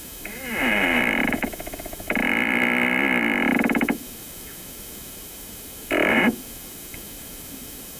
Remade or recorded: remade